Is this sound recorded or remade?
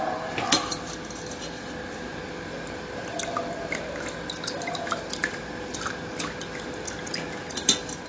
recorded